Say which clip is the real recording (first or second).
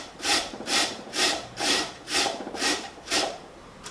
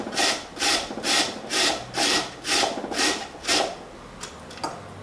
second